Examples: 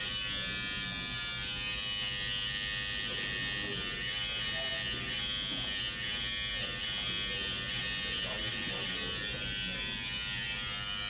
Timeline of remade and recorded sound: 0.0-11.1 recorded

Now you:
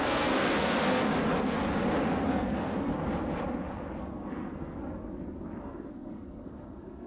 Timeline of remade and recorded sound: 0.0-1.1 remade; 1.1-2.3 recorded; 2.3-2.9 remade; 2.9-4.0 recorded; 4.0-4.8 remade; 4.8-5.6 recorded; 5.6-7.1 remade

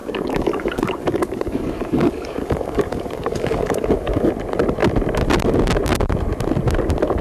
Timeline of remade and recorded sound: 0.0-4.3 remade; 4.3-7.2 recorded

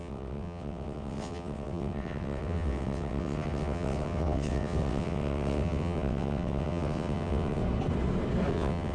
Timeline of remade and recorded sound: 0.0-7.6 remade; 7.6-8.5 recorded; 8.5-8.9 remade

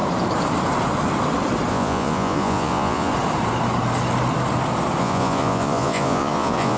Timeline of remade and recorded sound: 0.0-1.7 recorded; 1.7-3.1 remade; 3.1-5.0 recorded; 5.0-6.8 remade